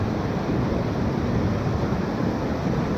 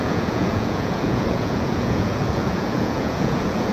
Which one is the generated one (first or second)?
second